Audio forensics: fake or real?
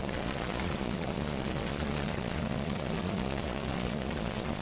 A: fake